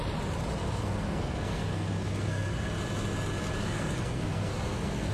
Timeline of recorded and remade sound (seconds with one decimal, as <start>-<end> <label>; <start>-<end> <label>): 0.0-0.6 recorded; 0.6-2.8 remade; 2.8-3.6 recorded; 3.6-5.1 remade